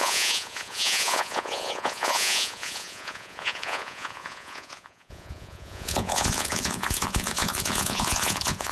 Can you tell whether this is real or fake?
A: fake